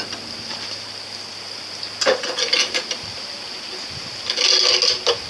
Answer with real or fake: real